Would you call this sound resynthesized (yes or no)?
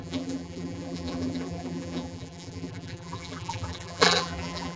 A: yes